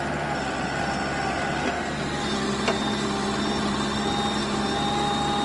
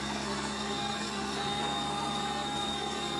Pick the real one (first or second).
first